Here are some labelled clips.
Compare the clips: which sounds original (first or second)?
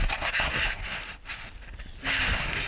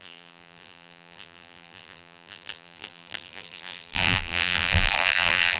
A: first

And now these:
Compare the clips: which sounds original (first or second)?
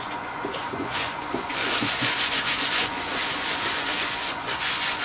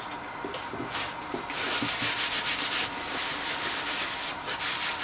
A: second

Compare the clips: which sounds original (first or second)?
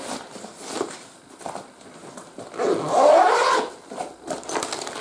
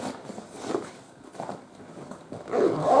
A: first